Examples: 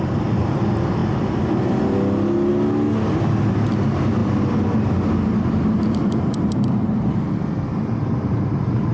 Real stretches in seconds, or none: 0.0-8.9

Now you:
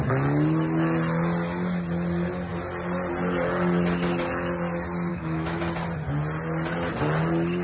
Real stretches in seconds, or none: 0.0-5.1; 5.6-7.6

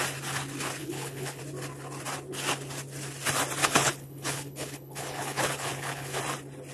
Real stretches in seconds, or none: 0.0-0.8; 1.4-3.6; 6.2-6.7

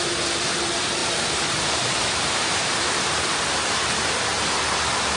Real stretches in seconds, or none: 0.0-1.0; 3.8-5.2

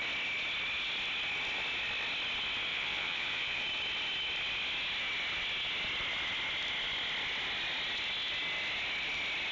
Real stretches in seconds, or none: 0.0-2.7; 3.6-9.5

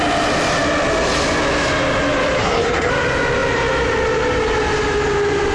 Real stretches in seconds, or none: 0.0-2.4; 2.9-5.5